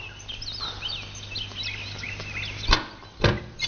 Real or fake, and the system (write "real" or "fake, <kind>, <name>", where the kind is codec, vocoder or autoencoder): real